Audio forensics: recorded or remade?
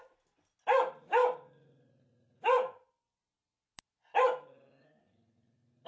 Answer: recorded